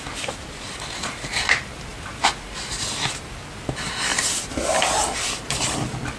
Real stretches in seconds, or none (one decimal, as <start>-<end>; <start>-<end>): 0.0-6.2